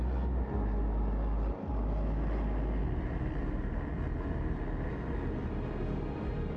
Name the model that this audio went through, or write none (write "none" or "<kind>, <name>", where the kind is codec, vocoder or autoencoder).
none